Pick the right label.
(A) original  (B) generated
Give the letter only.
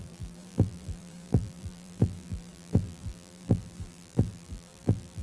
B